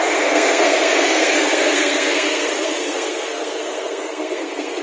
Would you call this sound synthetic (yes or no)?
yes